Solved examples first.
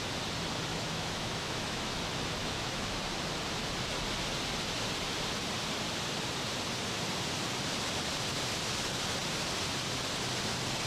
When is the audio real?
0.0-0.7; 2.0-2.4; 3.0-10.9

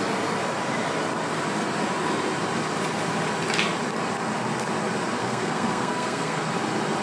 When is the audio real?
0.0-5.2; 6.4-7.0

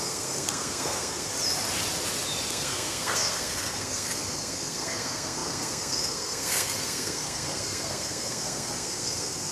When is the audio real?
1.3-2.5

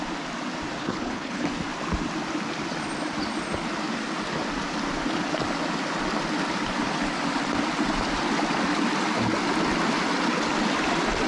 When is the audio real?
0.0-0.8; 1.5-11.3

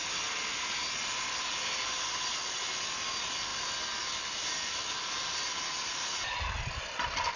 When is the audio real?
0.0-7.4

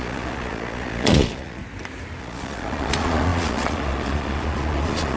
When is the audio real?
1.6-2.2

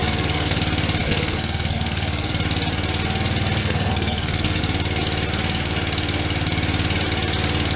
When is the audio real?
0.6-1.0; 2.3-3.6; 4.6-7.8